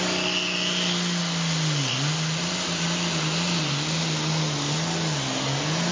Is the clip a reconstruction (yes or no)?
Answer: no